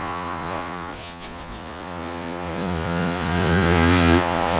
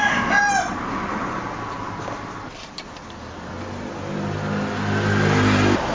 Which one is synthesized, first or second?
first